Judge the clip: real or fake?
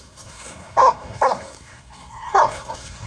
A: fake